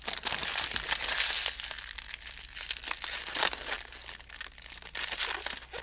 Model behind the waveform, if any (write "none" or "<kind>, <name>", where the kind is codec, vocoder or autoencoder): none